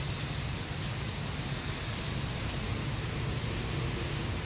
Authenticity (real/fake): real